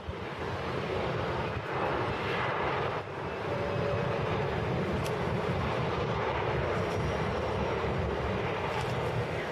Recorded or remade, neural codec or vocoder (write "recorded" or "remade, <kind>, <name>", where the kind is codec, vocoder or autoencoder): recorded